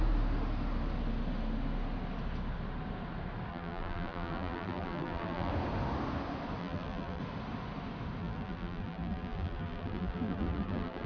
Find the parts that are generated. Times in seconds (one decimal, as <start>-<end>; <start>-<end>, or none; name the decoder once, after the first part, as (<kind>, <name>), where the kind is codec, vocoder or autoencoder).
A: 3.5-5.5 (vocoder, BigVGAN v2); 6.6-7.2; 8.2-11.1